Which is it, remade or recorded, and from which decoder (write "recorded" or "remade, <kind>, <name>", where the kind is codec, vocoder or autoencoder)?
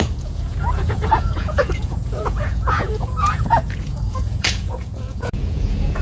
remade, vocoder, Vocos